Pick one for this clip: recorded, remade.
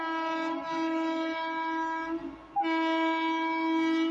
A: recorded